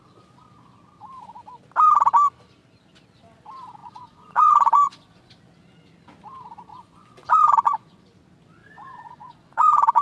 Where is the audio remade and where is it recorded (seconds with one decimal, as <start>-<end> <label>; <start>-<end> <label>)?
0.0-3.8 recorded; 3.8-5.3 remade; 5.3-6.7 recorded; 6.7-8.0 remade; 8.0-8.6 recorded; 8.6-10.0 remade